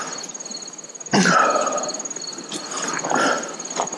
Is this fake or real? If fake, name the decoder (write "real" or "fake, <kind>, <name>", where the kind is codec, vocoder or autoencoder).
real